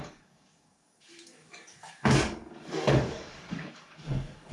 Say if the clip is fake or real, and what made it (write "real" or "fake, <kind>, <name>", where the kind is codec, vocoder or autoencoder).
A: fake, codec, DAC